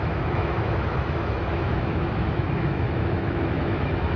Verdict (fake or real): fake